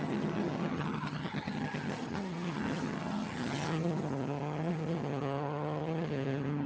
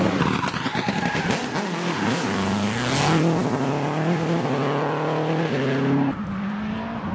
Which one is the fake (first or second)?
first